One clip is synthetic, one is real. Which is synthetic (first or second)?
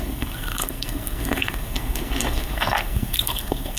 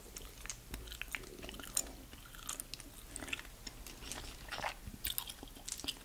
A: first